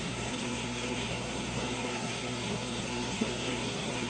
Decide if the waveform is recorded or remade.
remade